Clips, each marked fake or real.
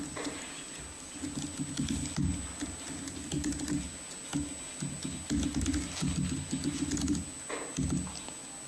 real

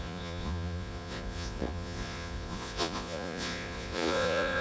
fake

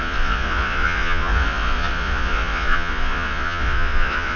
fake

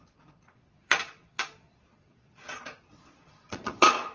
fake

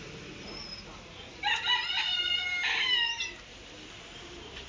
real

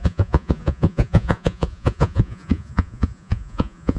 fake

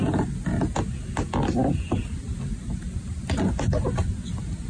real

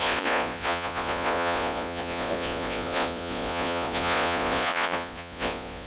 fake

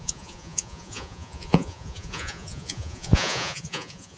fake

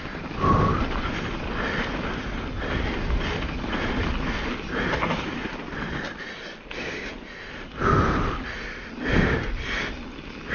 real